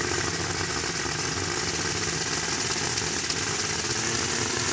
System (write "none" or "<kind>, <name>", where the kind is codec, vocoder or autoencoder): none